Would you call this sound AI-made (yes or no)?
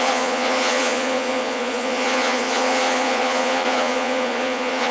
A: yes